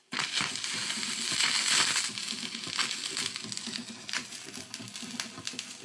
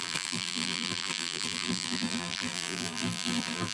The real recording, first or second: first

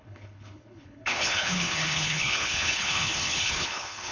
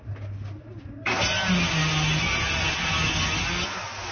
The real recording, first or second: second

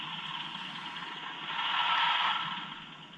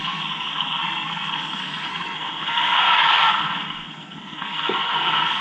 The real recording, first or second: first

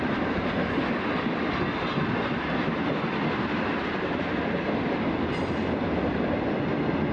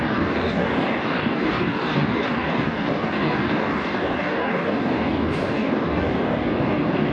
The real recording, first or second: first